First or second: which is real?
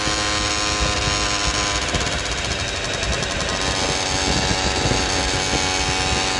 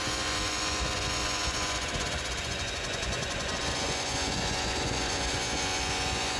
first